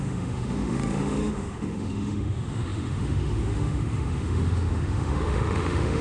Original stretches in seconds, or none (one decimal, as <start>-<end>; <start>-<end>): none

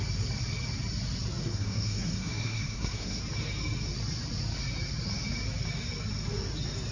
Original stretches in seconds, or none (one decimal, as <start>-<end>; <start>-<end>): 0.0-1.4; 3.2-6.9

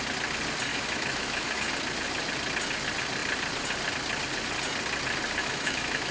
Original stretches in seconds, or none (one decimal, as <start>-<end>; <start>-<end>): 0.0-0.7; 1.7-5.4

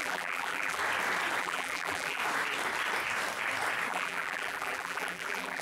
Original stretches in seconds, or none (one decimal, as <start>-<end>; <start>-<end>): 0.8-1.4; 2.2-3.9

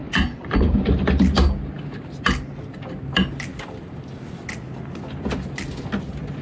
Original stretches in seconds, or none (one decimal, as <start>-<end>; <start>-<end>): 0.7-6.4